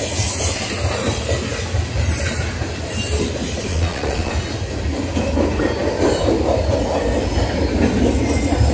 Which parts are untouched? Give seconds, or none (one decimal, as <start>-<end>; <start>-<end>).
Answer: 0.0-3.7; 4.3-8.7